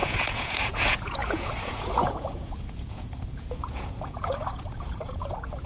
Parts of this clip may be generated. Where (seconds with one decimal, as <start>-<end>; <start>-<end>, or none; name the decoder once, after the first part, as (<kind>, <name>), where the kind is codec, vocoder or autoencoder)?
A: 0.0-5.7 (vocoder, Vocos)